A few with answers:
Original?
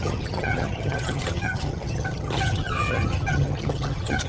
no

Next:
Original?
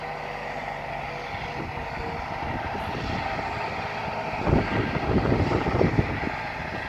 yes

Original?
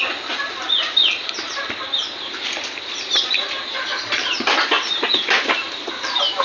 no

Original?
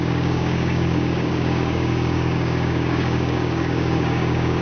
no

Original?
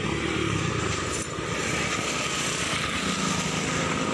yes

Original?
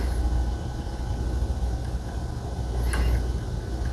yes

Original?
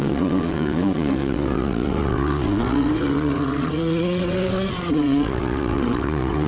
no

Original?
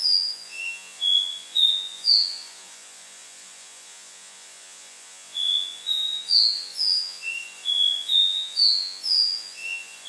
no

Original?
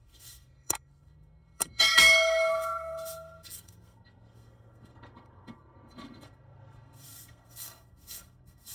no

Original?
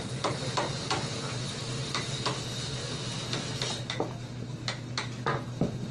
yes